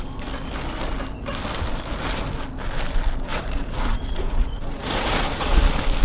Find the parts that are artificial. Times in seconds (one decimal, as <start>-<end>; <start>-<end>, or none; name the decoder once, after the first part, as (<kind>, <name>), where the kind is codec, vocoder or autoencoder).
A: 3.3-5.6 (vocoder, Vocos)